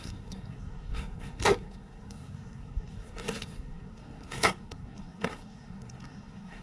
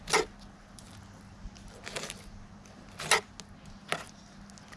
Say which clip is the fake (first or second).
first